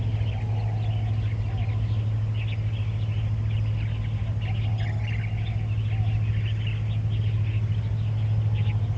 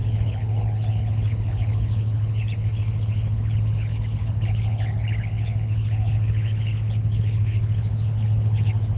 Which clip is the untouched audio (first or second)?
first